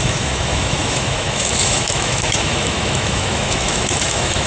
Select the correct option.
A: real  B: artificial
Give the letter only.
B